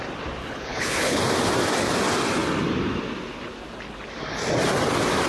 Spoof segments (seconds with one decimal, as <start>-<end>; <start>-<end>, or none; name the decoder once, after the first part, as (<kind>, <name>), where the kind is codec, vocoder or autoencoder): 0.4-1.2 (codec, HILCodec)